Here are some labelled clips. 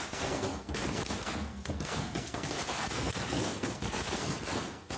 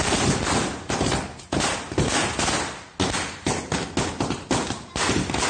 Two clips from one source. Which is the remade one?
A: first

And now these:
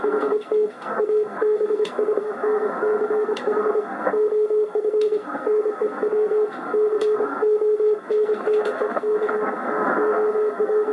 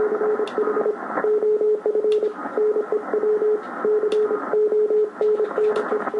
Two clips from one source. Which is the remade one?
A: first